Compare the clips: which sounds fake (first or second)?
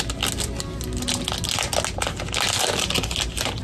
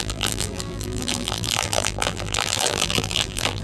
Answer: second